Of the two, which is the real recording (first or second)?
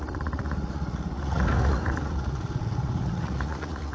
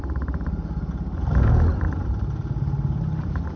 second